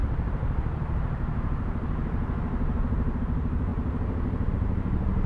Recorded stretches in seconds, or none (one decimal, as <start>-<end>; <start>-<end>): 3.7-4.5